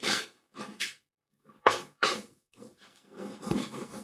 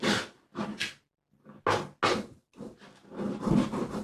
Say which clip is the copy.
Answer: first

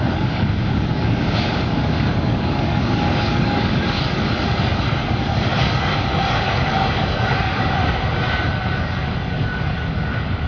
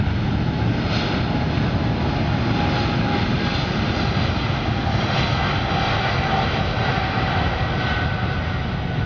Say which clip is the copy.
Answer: first